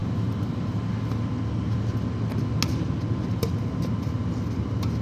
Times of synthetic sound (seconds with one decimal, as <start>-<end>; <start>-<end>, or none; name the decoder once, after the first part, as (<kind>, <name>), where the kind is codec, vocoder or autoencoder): none